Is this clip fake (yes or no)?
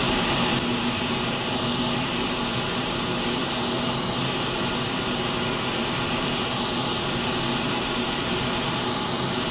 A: yes